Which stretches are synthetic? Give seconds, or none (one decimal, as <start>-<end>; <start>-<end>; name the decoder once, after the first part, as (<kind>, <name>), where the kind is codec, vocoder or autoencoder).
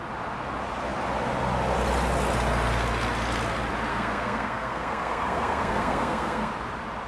3.9-6.5 (codec, SNAC)